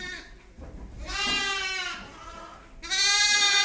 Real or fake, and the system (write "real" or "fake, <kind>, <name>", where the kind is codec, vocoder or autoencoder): real